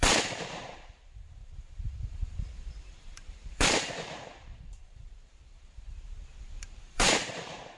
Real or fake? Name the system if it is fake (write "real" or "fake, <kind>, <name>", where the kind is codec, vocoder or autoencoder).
fake, vocoder, BigVGAN v2